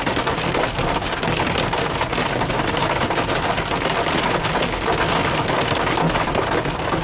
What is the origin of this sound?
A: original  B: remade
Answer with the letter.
A